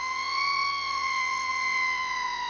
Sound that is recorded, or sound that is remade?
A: remade